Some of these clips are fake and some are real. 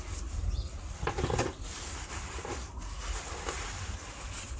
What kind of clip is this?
real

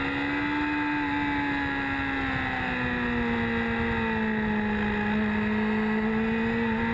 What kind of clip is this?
real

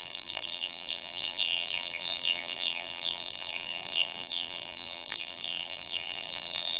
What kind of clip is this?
fake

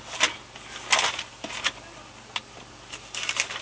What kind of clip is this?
real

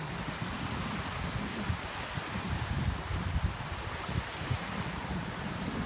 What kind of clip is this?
real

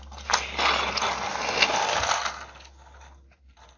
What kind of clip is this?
real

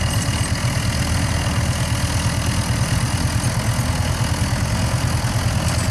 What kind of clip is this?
real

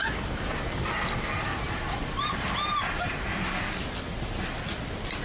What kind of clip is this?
real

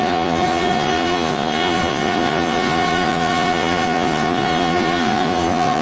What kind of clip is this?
fake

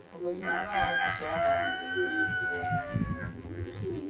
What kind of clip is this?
fake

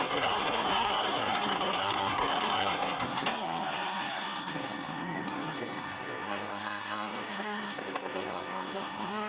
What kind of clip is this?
fake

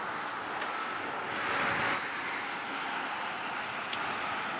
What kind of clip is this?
real